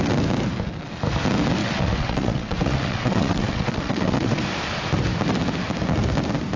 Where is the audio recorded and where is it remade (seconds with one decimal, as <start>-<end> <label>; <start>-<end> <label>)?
0.0-1.6 recorded; 1.6-4.4 remade; 4.4-6.6 recorded